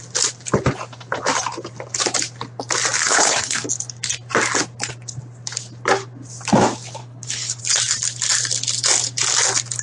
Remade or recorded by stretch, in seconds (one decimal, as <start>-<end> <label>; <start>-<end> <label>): 0.0-3.0 recorded; 3.0-3.7 remade; 3.7-7.0 recorded; 7.0-7.6 remade; 7.6-9.8 recorded